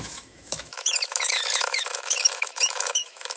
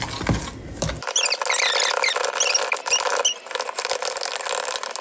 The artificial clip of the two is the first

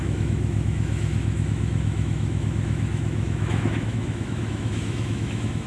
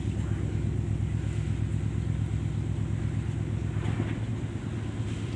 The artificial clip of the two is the first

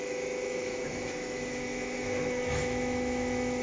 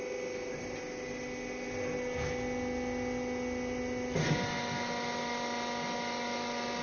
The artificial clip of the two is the first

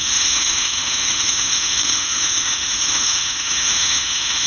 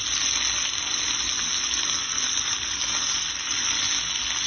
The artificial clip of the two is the first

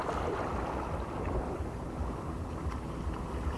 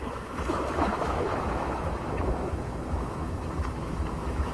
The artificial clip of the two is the second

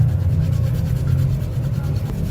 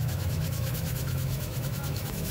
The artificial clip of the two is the second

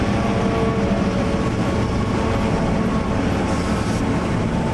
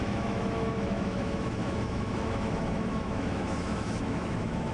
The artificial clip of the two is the second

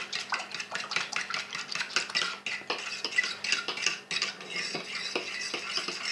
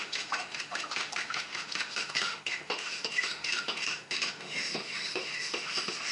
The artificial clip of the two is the second